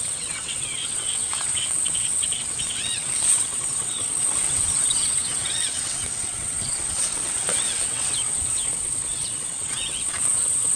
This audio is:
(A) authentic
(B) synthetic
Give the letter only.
B